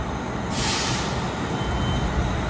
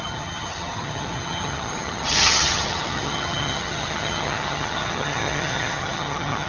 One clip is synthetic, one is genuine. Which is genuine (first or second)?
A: first